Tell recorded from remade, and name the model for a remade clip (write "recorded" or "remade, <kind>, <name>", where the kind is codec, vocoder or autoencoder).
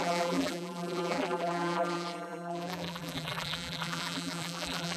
remade, vocoder, BigVGAN v2